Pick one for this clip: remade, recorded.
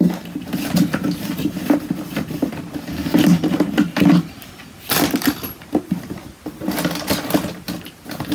recorded